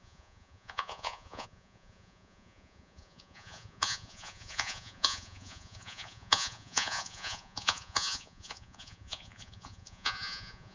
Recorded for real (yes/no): no